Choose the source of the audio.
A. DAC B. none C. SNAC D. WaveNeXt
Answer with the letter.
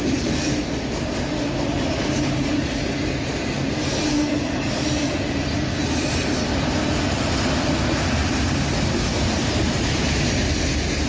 B